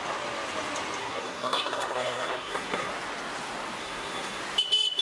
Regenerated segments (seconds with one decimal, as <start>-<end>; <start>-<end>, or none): 1.0-2.9; 3.8-4.4